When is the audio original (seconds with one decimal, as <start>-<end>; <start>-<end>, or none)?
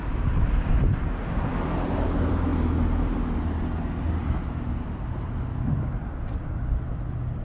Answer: 0.0-7.4